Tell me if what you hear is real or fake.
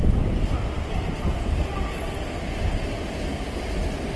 real